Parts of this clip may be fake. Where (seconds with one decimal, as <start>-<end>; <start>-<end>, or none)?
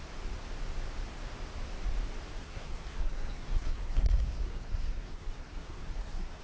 2.4-6.4